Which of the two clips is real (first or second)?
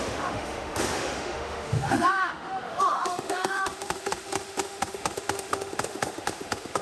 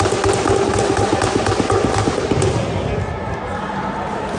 second